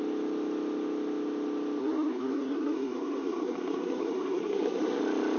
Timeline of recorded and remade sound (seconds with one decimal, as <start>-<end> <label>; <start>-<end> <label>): 0.0-1.8 recorded; 1.8-5.0 remade; 5.0-5.4 recorded